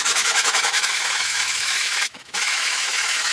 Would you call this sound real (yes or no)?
no